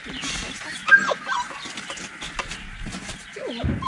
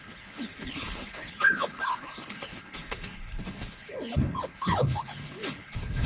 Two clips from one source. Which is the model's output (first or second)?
second